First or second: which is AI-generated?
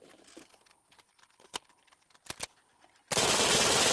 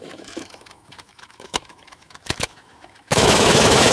second